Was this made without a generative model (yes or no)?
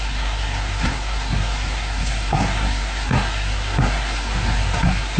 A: no